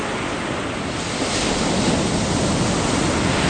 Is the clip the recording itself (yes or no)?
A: yes